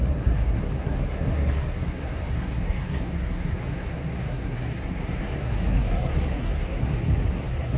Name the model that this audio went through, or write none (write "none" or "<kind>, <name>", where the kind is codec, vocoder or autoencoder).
codec, SNAC